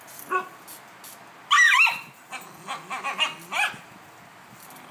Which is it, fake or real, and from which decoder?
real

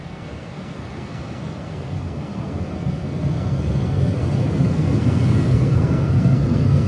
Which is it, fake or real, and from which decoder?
fake, codec, SNAC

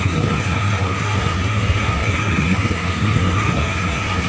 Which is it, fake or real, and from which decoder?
fake, codec, SNAC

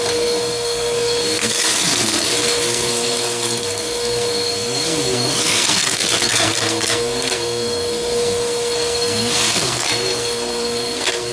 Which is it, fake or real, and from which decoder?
fake, codec, SNAC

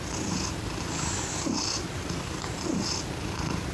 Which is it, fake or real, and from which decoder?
real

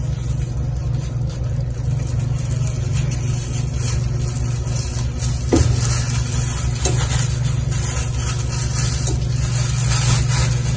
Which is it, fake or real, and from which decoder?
real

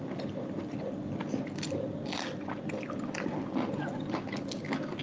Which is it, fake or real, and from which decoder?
real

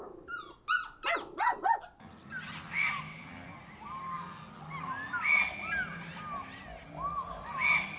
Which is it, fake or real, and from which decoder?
real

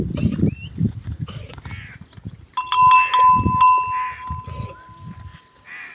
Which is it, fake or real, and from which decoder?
real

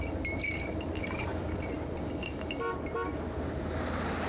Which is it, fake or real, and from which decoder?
real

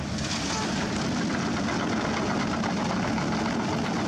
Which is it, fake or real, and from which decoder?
real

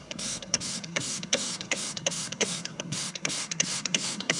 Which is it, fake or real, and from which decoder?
fake, codec, SNAC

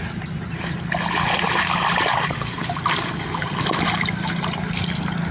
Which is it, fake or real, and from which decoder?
real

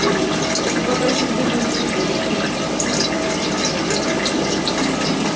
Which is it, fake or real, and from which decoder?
real